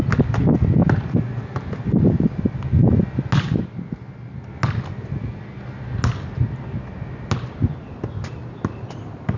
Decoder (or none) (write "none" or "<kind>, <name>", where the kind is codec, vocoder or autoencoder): none